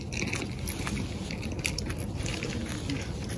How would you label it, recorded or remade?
recorded